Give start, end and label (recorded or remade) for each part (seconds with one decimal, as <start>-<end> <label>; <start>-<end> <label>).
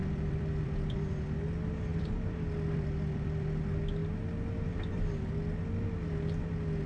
0.0-1.1 remade; 1.1-1.9 recorded; 1.9-3.6 remade; 3.6-6.9 recorded